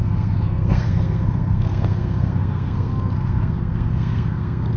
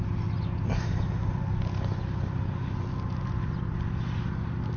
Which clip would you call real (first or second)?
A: second